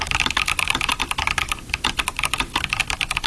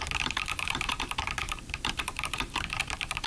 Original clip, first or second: first